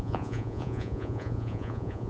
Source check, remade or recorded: remade